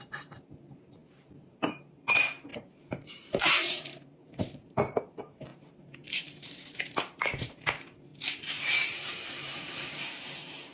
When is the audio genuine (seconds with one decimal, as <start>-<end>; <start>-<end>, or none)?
none